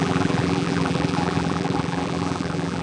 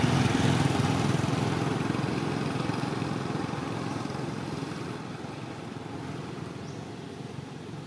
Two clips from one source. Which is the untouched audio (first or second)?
second